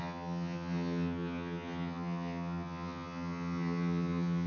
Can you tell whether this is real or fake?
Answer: fake